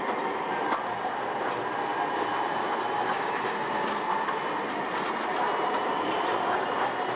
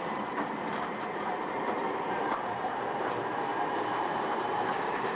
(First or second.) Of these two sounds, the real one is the first